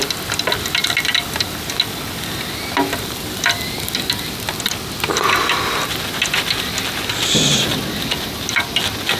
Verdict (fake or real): real